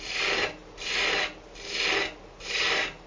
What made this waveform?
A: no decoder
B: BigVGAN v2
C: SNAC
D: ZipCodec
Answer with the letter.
A